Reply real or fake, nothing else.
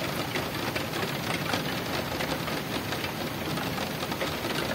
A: real